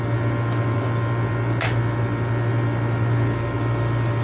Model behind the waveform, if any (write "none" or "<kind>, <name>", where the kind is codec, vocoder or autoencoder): none